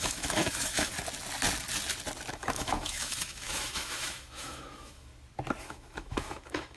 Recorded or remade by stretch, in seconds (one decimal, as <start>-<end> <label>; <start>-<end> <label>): 0.0-0.9 remade; 0.9-2.3 recorded; 2.3-5.1 remade; 5.1-5.6 recorded; 5.6-6.8 remade